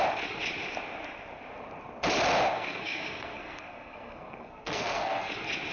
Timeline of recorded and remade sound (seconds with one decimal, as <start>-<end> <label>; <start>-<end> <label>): 0.0-2.5 recorded; 2.5-5.3 remade; 5.3-5.7 recorded